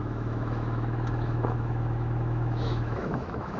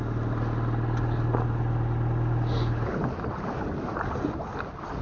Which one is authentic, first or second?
second